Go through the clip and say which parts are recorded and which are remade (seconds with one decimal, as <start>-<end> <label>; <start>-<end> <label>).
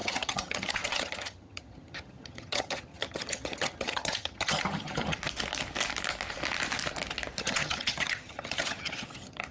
0.0-5.2 remade; 5.2-7.4 recorded; 7.4-9.5 remade